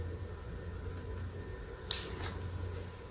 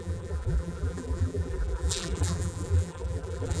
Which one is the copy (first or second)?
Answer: second